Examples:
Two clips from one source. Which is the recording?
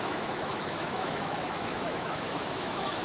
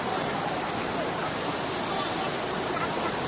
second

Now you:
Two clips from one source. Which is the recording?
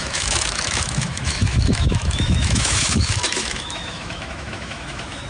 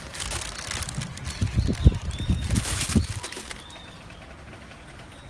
second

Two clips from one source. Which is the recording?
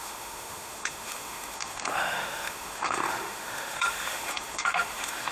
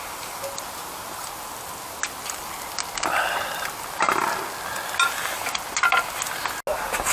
second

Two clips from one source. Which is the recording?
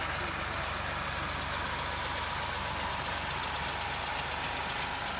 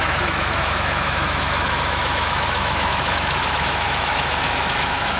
first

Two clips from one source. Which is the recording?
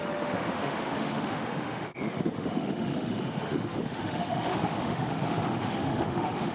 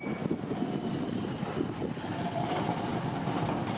second